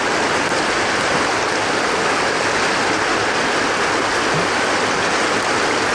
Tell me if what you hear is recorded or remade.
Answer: recorded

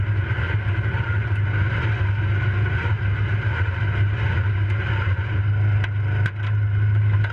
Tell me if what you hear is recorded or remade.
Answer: recorded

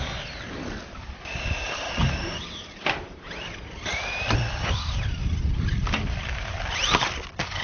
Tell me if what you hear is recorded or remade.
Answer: remade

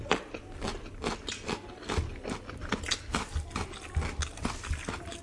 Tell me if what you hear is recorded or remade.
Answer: recorded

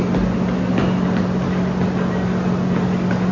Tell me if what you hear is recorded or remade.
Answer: recorded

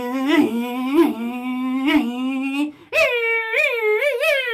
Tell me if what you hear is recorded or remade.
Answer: remade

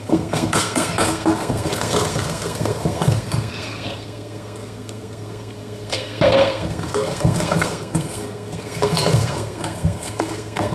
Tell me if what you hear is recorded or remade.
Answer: remade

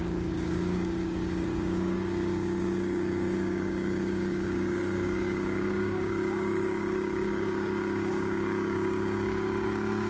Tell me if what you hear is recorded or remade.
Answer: remade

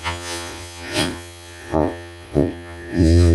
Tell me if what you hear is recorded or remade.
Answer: remade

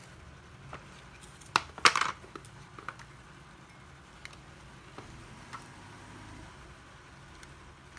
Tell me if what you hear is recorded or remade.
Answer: recorded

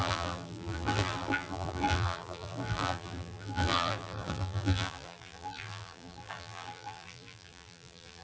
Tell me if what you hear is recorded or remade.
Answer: remade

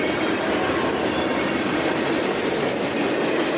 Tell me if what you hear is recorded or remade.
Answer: recorded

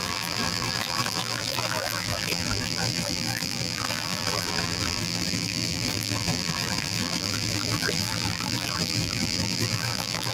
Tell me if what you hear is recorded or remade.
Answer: remade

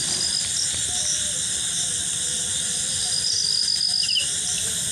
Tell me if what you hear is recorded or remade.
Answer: remade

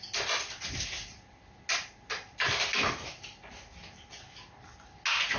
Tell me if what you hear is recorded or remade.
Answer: recorded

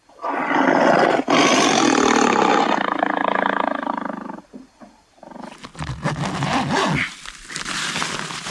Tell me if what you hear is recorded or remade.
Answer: recorded